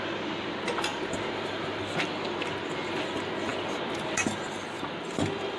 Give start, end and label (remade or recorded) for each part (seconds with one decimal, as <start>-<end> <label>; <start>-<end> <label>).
0.0-0.9 recorded; 0.9-1.8 remade; 1.8-5.6 recorded